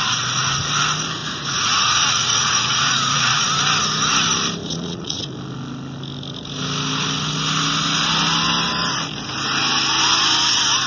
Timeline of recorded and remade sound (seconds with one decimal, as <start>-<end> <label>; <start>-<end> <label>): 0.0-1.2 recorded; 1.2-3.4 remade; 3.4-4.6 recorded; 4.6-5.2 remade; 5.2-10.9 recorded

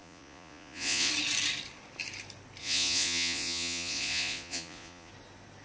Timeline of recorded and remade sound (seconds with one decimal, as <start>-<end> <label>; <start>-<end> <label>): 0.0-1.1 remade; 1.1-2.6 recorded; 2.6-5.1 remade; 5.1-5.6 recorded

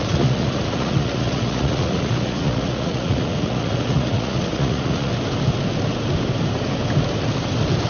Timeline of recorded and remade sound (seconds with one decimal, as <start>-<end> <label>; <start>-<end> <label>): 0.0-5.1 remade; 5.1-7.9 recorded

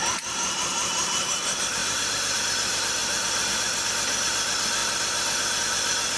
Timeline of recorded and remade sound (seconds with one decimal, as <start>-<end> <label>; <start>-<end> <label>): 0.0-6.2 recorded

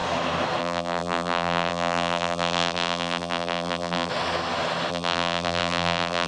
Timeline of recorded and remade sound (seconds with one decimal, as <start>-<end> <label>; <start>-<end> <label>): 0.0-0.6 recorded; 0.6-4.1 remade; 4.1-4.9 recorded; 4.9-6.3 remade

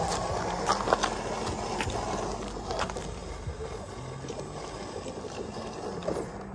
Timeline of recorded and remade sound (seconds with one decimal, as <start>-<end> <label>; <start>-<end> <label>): 0.0-6.5 recorded